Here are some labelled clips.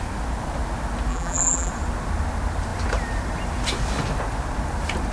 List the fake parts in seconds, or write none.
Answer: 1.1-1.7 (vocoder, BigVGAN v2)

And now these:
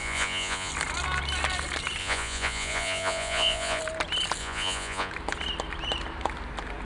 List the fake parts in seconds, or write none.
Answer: 0.0-0.7 (vocoder, Vocos); 2.0-3.8; 4.4-5.1

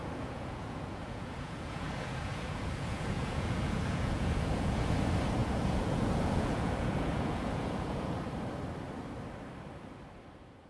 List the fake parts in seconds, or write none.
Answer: 0.0-5.0 (vocoder, Vocos); 5.4-8.2

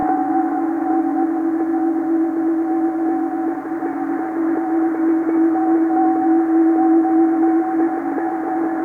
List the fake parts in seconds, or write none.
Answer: 0.0-0.8 (autoencoder, DAC-VAE); 5.6-6.4

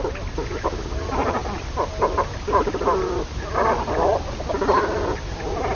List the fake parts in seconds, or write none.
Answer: none